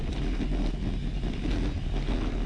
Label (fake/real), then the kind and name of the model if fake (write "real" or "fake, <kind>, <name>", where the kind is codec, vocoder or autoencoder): real